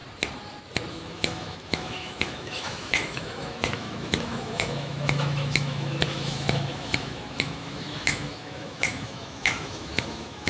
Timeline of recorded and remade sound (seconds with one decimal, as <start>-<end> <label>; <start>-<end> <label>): 0.0-0.9 recorded; 0.9-10.5 remade